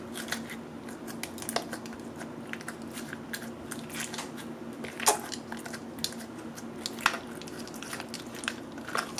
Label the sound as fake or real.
real